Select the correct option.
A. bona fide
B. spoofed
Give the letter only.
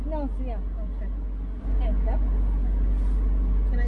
A